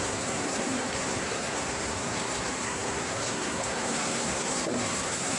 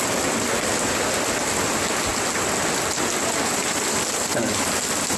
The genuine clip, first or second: second